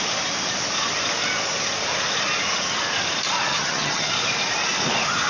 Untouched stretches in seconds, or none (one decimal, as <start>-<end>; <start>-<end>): 0.0-3.5; 4.1-5.3